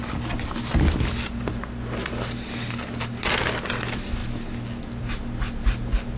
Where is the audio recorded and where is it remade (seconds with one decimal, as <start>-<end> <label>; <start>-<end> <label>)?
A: 0.0-6.2 recorded